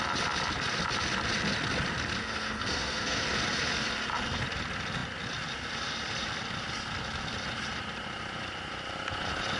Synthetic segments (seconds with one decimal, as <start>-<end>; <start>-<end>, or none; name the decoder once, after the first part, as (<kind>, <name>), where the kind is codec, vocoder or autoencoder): 2.2-3.2 (codec, SNAC)